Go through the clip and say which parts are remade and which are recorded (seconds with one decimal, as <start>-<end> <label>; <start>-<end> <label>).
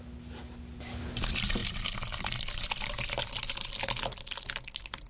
0.0-5.1 recorded